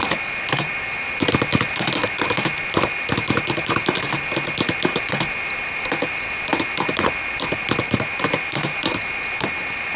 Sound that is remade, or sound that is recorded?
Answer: recorded